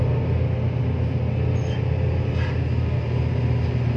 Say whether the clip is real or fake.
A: real